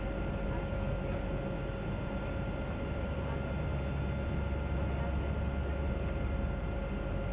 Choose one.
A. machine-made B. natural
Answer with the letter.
B